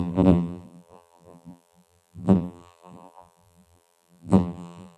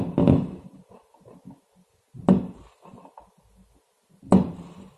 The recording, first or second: second